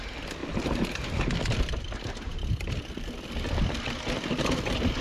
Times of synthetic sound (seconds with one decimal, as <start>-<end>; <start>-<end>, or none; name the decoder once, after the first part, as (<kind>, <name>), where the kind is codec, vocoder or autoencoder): 0.4-3.3 (vocoder, BigVGAN v2)